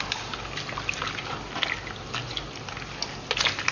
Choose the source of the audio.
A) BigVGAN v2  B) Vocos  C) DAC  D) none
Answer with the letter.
D